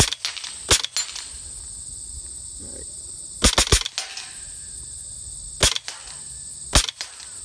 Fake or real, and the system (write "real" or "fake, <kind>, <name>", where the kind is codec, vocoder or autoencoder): real